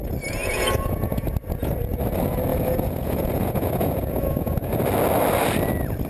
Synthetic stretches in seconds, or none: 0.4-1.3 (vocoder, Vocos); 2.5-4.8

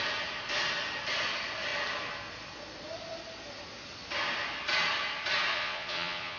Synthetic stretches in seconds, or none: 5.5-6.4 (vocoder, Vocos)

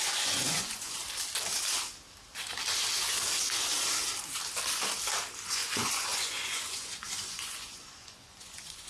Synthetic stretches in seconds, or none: 0.0-1.0 (vocoder, Vocos); 5.5-8.9

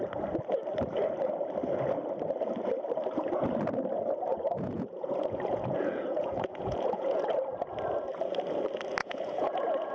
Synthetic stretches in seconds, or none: 4.3-7.2 (vocoder, Vocos); 9.0-9.9

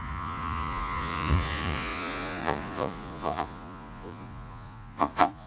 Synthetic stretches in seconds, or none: 0.0-5.5 (vocoder, Vocos)